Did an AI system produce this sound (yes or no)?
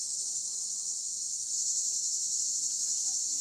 no